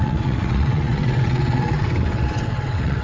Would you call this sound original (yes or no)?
no